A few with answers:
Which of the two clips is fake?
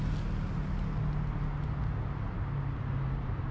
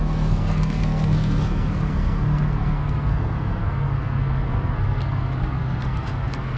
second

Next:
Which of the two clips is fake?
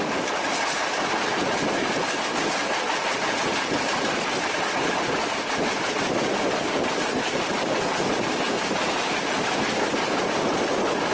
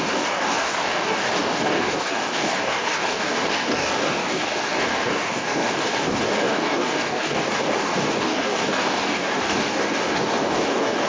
second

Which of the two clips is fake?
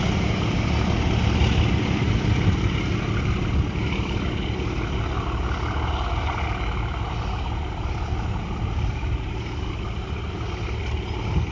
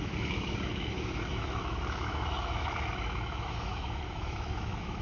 second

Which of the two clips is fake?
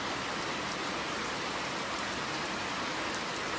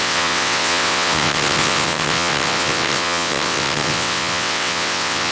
second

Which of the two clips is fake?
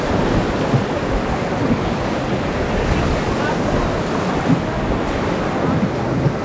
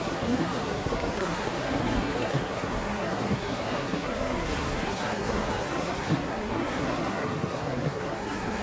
second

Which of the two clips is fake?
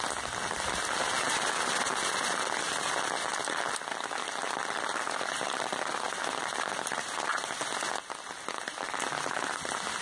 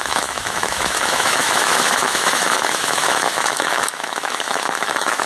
second